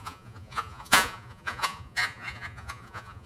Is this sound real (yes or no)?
no